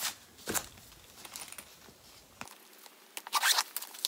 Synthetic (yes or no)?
no